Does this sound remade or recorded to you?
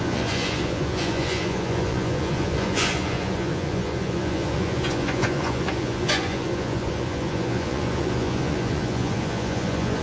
remade